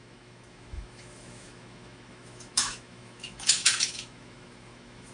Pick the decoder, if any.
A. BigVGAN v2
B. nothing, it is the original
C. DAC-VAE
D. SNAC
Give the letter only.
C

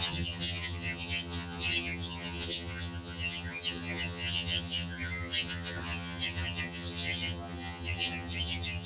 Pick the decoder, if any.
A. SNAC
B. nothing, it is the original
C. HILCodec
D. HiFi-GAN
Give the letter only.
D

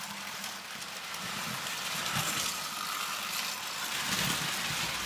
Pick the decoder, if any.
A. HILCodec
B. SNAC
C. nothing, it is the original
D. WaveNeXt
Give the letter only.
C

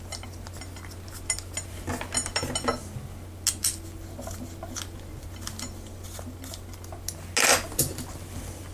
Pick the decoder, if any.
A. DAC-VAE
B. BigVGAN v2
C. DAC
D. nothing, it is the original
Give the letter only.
D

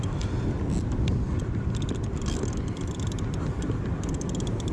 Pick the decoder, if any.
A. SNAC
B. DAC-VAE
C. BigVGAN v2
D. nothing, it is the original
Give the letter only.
D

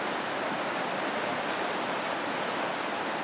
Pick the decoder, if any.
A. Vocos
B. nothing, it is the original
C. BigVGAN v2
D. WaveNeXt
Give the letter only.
C